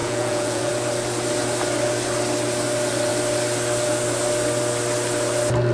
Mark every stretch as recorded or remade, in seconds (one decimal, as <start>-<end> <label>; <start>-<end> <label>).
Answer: 0.0-0.7 remade; 0.7-5.7 recorded